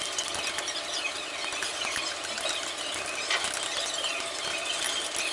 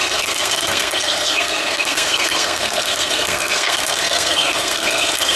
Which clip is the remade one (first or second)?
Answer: second